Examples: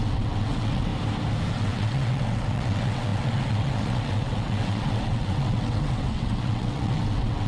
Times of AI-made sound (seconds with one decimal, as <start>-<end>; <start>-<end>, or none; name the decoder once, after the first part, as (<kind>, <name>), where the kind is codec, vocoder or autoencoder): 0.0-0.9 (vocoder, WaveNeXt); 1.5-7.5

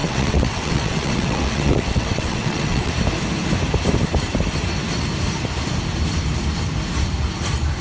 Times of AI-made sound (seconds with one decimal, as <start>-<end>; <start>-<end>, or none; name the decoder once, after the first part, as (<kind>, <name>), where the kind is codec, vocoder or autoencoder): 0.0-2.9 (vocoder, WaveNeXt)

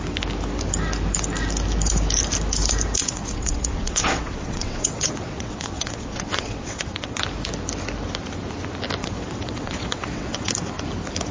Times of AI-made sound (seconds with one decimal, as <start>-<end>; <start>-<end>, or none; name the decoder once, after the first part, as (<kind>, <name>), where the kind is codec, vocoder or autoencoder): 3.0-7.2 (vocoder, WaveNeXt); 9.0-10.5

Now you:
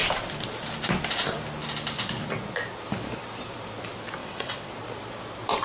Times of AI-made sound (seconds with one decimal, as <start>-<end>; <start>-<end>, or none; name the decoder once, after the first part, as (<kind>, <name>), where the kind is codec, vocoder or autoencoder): 4.2-4.7 (vocoder, WaveNeXt)